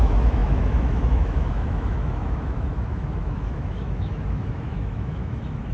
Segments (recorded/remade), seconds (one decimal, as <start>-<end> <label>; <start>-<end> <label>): 0.0-5.7 remade